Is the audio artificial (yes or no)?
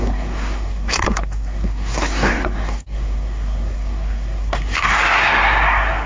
yes